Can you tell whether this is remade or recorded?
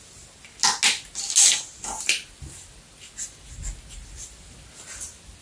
recorded